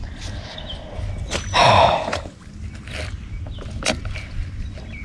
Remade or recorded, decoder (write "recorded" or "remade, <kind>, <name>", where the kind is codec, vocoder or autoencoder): recorded